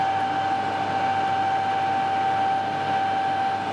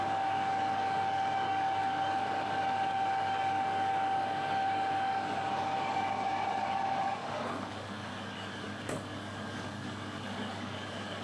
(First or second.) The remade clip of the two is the second